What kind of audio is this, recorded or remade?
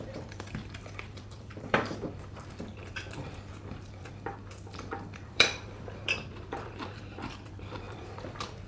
remade